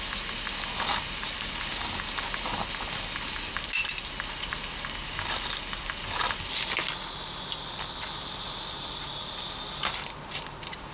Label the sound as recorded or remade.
recorded